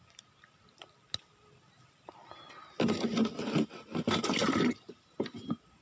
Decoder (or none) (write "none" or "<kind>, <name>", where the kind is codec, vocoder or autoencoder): none